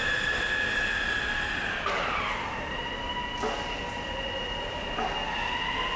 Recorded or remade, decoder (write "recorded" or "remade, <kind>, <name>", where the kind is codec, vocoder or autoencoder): recorded